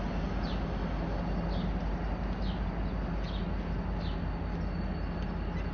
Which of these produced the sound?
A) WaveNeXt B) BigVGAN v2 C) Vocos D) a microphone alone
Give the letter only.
D